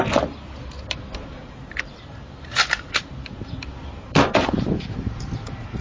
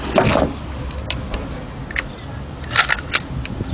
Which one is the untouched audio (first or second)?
second